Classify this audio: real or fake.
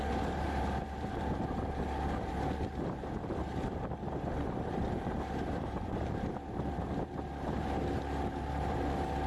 fake